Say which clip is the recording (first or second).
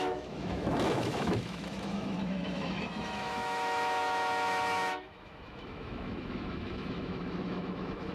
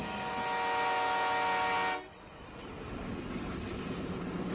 second